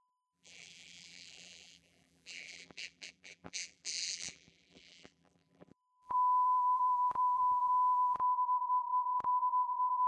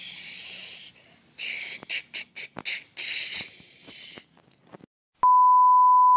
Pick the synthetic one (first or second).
first